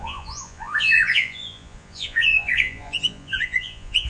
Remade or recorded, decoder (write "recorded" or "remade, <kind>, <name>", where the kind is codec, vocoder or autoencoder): remade, vocoder, Vocos